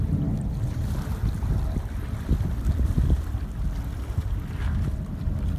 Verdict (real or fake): real